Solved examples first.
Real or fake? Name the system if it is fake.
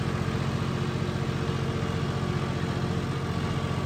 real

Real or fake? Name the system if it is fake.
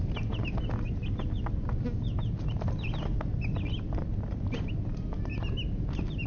real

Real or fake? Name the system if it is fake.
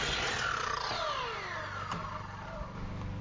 real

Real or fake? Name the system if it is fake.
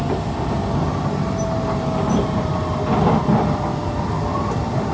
real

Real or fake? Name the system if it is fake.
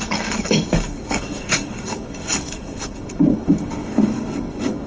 fake, codec, DAC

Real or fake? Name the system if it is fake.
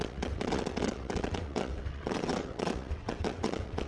fake, vocoder, WaveNeXt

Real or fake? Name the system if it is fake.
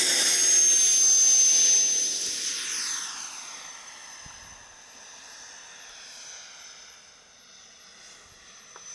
real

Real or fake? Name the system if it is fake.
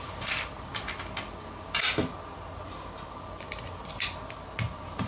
real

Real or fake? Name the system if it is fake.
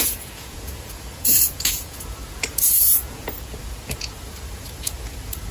fake, vocoder, Vocos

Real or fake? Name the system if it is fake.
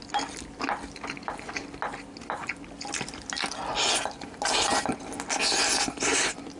real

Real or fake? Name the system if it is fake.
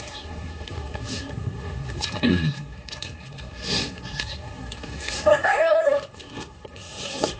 fake, codec, SNAC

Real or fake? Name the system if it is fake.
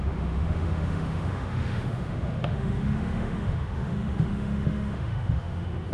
fake, autoencoder, DAC-VAE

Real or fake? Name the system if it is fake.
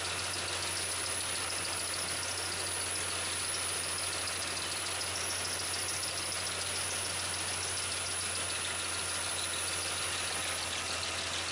real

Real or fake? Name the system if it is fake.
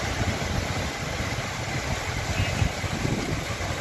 real